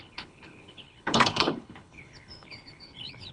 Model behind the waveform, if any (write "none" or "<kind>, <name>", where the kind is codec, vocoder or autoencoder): codec, HILCodec